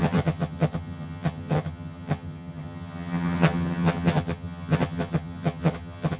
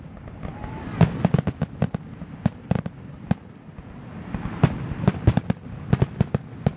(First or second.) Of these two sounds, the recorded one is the second